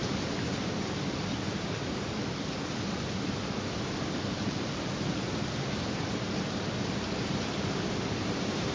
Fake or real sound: real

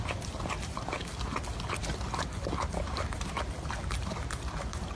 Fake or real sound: real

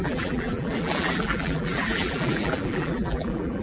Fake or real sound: fake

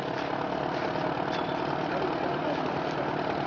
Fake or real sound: real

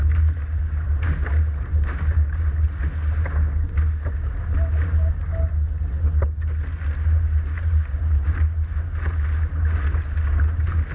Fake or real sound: real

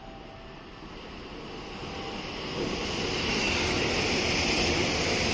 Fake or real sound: real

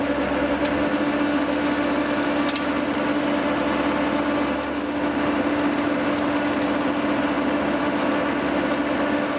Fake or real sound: real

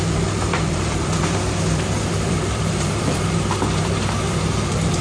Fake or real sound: fake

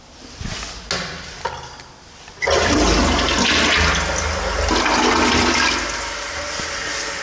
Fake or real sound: real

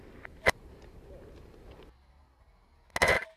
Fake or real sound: real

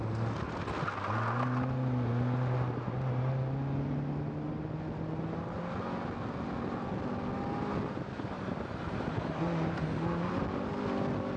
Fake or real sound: real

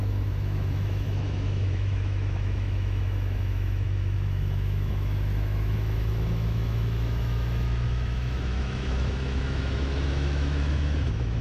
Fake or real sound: fake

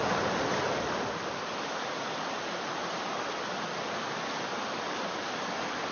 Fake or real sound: real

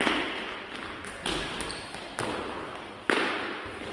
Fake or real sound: real